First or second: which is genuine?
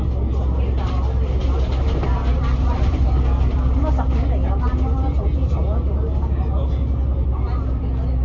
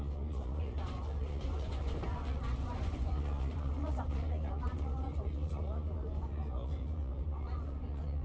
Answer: first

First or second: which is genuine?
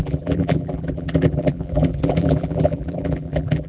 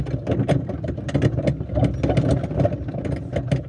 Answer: second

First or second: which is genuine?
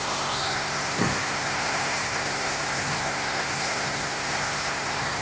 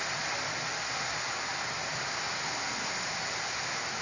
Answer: second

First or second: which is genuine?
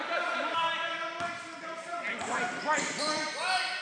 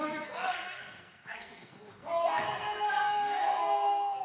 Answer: first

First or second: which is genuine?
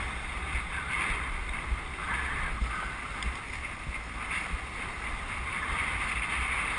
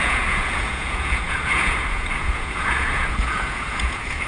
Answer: first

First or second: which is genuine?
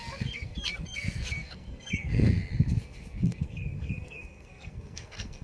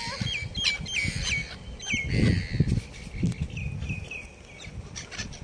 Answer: second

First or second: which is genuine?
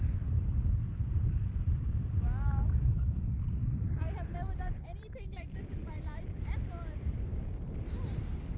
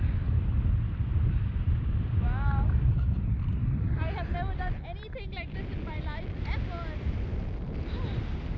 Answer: second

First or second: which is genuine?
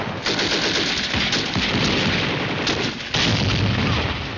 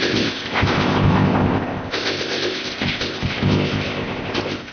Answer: first